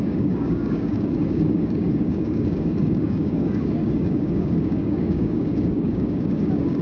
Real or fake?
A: fake